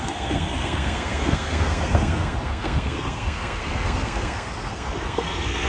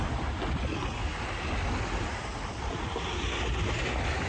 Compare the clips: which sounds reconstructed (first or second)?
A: first